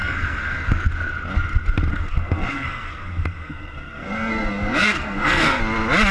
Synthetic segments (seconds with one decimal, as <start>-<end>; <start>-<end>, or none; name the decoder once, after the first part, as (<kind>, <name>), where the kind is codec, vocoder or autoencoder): 0.0-0.9 (codec, SNAC); 1.9-5.6